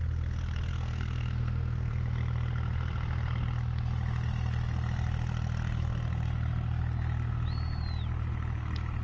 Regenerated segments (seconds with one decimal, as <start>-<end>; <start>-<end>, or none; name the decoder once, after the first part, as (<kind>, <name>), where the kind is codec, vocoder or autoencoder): 0.7-1.9 (codec, SNAC)